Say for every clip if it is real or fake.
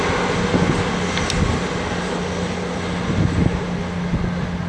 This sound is real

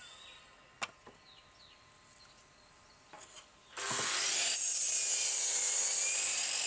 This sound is real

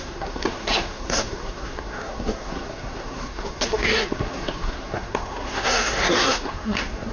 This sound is fake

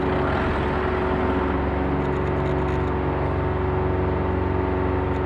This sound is real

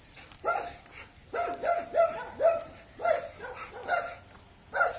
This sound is real